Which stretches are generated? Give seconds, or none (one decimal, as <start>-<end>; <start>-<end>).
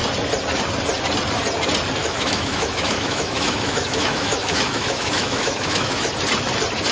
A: 2.0-6.1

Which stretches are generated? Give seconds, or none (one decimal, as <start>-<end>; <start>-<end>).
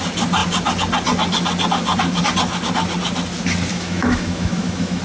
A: 3.7-5.0